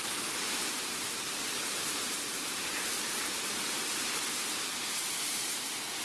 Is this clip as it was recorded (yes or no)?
no